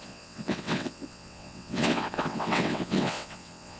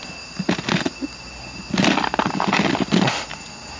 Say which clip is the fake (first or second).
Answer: first